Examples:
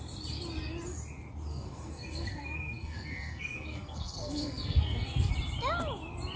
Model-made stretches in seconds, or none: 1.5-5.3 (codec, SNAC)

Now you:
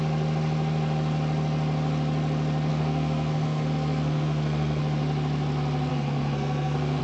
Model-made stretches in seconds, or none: 2.7-4.8 (codec, SNAC); 5.9-7.0

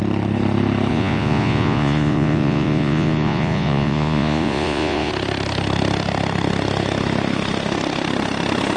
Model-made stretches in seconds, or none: 0.9-5.1 (vocoder, Vocos)